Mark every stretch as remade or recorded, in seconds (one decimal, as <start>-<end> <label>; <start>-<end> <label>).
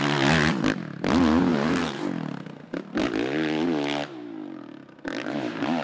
0.0-1.5 recorded; 1.5-2.0 remade; 2.0-5.8 recorded